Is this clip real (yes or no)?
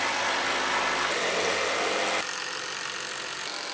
yes